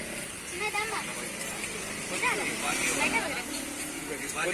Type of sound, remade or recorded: recorded